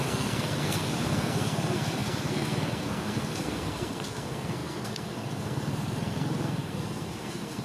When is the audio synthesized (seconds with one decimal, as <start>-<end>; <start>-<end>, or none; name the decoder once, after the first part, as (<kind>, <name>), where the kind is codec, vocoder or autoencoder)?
0.0-7.6 (codec, SNAC)